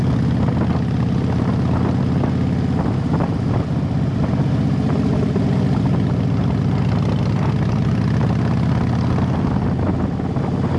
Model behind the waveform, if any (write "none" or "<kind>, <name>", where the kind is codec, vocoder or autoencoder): none